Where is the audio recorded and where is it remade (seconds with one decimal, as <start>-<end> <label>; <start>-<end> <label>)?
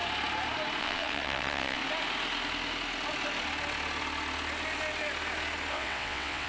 0.0-0.8 recorded; 0.8-1.8 remade; 1.8-5.7 recorded; 5.7-6.5 remade